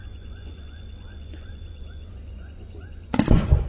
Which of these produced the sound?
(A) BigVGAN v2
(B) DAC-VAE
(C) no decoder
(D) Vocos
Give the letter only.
D